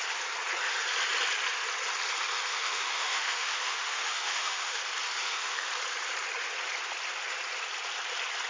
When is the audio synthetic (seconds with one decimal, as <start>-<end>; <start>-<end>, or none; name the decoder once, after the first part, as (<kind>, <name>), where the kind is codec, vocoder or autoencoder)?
2.5-4.8 (autoencoder, DAC-VAE); 5.2-5.7